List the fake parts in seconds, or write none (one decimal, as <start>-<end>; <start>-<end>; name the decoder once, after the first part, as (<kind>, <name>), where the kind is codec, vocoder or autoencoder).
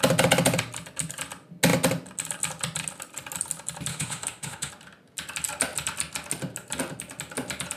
3.9-4.7 (autoencoder, DAC-VAE)